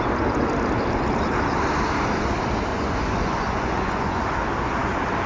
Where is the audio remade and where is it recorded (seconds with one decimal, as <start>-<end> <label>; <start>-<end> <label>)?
0.0-2.7 recorded; 2.7-4.2 remade; 4.2-5.3 recorded